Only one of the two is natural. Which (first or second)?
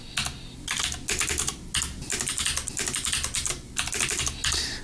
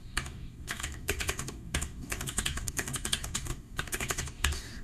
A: first